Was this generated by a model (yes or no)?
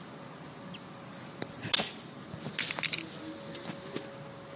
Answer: no